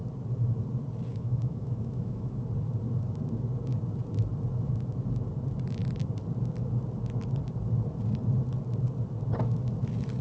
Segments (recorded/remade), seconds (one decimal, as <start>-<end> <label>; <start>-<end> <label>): 0.0-1.1 recorded; 1.1-2.4 remade; 2.4-10.2 recorded